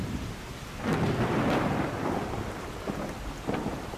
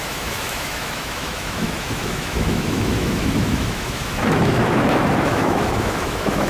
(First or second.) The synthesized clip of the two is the second